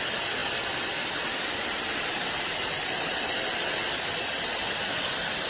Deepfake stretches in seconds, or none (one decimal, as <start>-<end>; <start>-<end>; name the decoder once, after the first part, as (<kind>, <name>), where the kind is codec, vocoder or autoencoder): 0.4-3.7 (vocoder, BigVGAN v2)